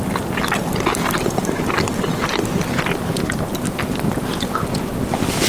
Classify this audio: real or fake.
real